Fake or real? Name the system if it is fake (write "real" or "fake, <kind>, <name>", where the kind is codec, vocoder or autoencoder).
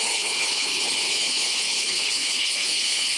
fake, codec, HILCodec